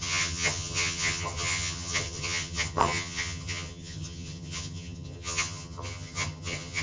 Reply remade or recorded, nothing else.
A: remade